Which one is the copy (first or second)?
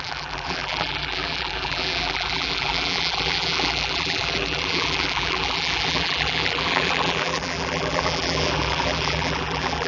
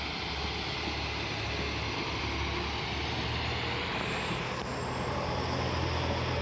first